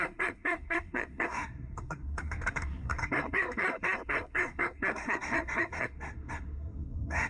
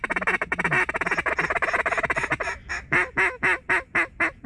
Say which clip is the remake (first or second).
first